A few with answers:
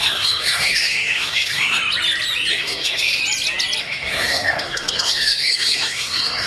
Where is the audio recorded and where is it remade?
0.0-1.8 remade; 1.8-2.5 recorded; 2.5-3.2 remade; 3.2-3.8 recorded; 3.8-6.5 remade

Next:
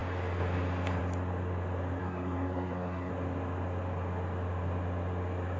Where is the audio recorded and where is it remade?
0.0-2.0 recorded; 2.0-3.1 remade; 3.1-5.6 recorded

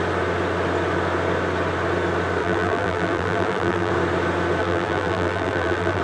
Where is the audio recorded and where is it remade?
0.0-2.4 recorded; 2.4-3.9 remade; 3.9-4.6 recorded; 4.6-6.0 remade

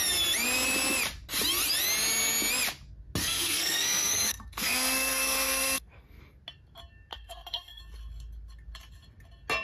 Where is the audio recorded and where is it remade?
0.0-3.2 recorded; 3.2-6.2 remade; 6.2-7.1 recorded; 7.1-7.8 remade; 7.8-9.6 recorded

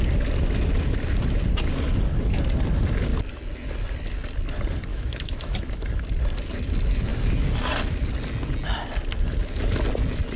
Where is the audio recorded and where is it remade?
0.0-4.9 recorded; 4.9-5.7 remade; 5.7-10.4 recorded

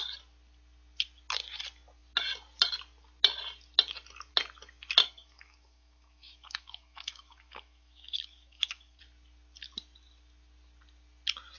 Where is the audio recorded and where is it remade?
0.0-5.0 recorded; 5.0-9.0 remade; 9.0-11.6 recorded